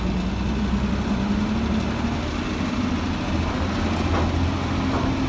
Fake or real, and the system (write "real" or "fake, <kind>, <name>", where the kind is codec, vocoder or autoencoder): real